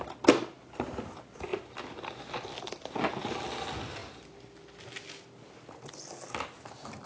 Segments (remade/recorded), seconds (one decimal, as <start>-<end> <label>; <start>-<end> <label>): 0.0-7.1 recorded